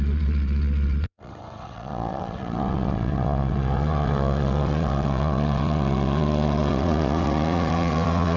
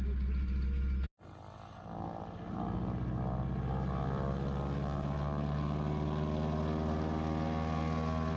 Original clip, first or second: second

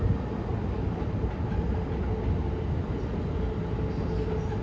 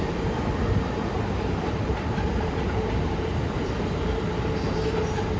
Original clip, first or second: first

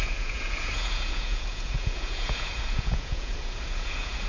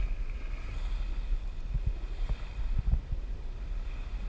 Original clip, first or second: second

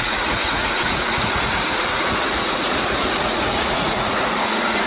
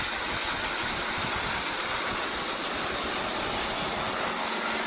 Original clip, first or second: second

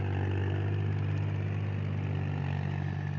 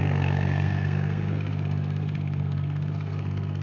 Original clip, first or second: first